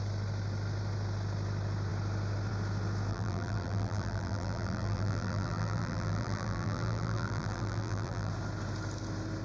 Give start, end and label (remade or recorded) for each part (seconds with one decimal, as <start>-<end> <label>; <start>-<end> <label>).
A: 0.0-3.1 recorded; 3.1-8.3 remade; 8.3-9.4 recorded